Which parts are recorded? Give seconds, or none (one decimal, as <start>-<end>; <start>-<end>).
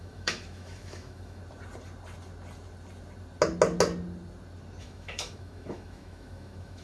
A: 1.4-4.8